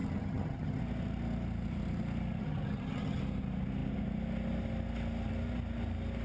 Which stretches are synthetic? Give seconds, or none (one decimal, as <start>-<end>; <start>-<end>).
0.0-0.8; 2.4-3.2